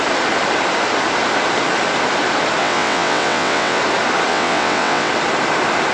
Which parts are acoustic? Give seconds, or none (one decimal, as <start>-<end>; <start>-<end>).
0.0-2.6; 3.8-4.3; 5.1-5.9